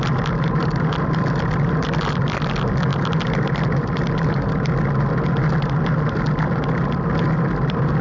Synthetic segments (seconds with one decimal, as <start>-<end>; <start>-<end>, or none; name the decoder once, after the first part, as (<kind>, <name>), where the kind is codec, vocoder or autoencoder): none